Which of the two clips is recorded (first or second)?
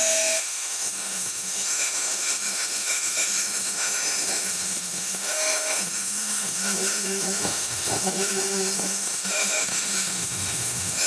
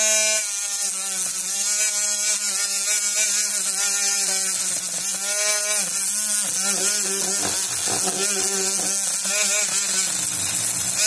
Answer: second